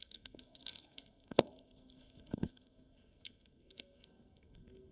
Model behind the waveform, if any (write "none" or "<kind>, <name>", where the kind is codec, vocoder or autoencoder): codec, SNAC